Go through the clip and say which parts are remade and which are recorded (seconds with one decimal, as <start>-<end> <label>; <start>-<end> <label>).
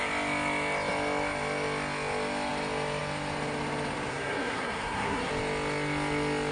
0.0-4.1 recorded; 4.1-5.3 remade; 5.3-6.5 recorded